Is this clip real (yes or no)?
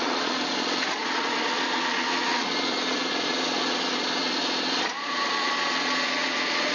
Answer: no